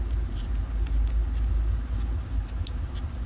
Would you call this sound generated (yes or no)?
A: no